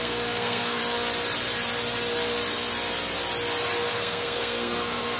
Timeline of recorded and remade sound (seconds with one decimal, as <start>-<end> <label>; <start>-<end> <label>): 0.0-0.8 remade; 0.8-3.9 recorded; 3.9-5.2 remade